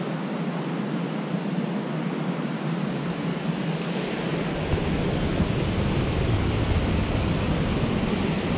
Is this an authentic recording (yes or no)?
yes